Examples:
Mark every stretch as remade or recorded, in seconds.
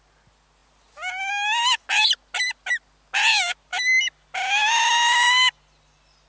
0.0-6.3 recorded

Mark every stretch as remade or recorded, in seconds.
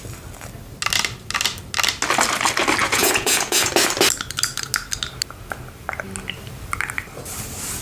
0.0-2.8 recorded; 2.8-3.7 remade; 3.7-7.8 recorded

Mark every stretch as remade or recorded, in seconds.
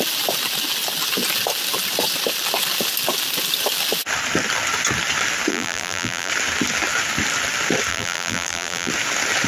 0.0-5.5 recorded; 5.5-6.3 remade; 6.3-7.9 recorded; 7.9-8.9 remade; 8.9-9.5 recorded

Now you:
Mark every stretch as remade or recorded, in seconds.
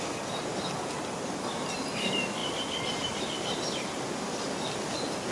0.0-5.3 recorded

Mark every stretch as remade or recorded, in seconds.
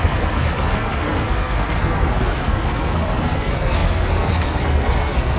0.0-5.4 remade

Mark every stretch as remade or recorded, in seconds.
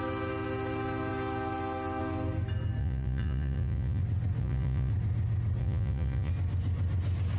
0.0-2.8 recorded; 2.8-4.0 remade; 4.0-4.4 recorded; 4.4-4.9 remade; 4.9-5.6 recorded; 5.6-6.3 remade; 6.3-7.4 recorded